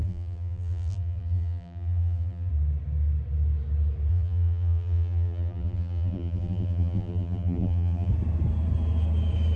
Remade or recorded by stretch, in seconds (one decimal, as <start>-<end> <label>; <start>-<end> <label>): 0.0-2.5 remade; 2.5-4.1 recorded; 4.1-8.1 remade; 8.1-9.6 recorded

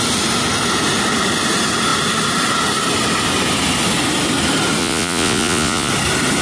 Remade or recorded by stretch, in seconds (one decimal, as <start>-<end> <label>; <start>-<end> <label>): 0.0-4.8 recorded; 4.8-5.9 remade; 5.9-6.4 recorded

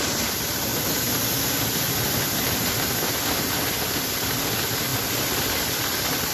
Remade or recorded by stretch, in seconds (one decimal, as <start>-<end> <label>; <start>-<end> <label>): 0.0-0.7 remade; 0.7-4.5 recorded; 4.5-6.3 remade

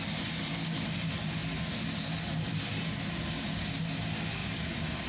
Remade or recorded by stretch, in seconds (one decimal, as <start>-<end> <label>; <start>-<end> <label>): 0.0-5.1 recorded

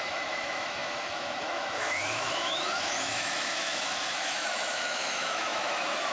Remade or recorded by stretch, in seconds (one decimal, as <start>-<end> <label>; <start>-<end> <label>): 0.0-6.1 remade

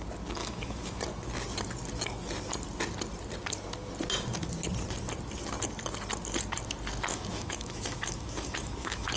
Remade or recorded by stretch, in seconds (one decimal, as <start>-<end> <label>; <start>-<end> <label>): 0.0-0.4 recorded; 0.4-1.0 remade; 1.0-7.1 recorded; 7.1-9.2 remade